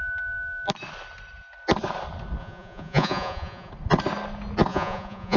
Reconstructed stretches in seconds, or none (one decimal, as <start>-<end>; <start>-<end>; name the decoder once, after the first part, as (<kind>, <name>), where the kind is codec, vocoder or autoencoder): 2.4-3.7 (vocoder, Vocos); 4.7-5.4